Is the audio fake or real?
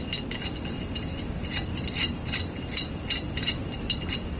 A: real